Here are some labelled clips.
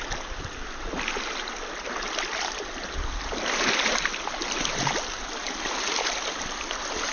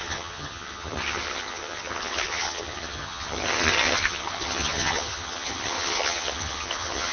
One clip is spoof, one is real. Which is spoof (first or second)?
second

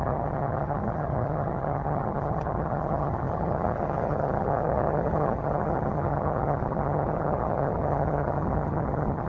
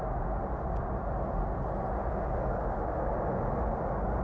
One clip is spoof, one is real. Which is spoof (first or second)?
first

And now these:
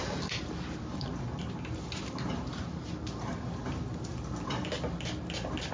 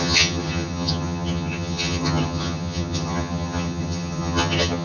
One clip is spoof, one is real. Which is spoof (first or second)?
second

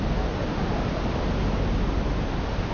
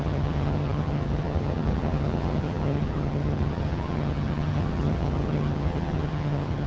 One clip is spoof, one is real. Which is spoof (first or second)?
second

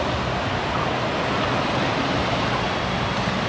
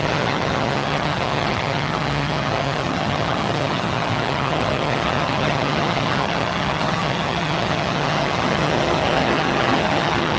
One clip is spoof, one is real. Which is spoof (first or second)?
second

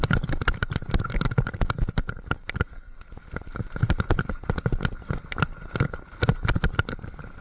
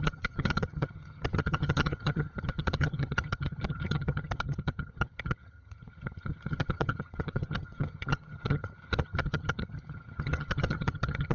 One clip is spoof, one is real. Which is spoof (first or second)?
second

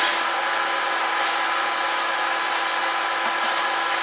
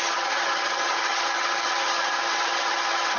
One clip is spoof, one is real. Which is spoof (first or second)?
second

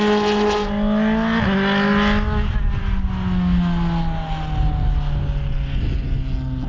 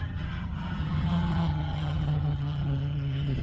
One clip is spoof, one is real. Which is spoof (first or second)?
second